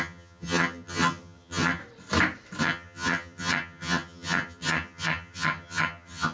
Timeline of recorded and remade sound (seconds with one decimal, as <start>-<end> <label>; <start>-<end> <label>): 0.0-1.8 remade; 1.8-2.6 recorded; 2.6-6.3 remade